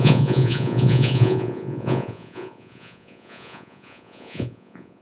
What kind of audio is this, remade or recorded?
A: remade